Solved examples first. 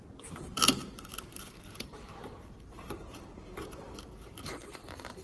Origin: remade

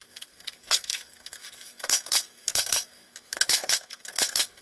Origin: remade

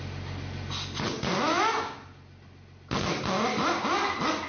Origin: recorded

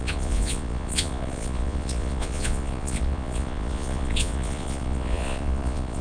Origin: remade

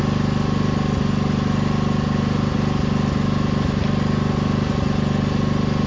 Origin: recorded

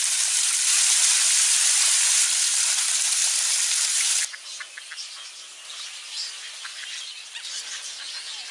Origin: recorded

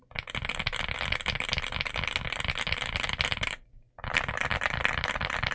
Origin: recorded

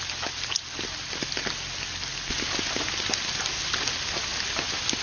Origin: recorded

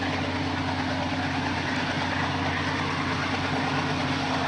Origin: recorded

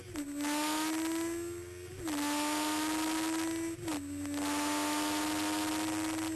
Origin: recorded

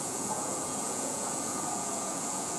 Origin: remade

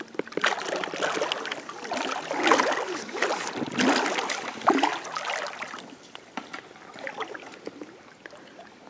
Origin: recorded